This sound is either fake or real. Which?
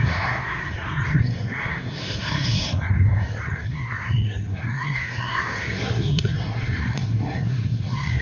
fake